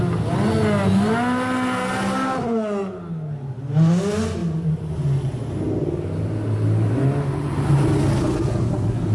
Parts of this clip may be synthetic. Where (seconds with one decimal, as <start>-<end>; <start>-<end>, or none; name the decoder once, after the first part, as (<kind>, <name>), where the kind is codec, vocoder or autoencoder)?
none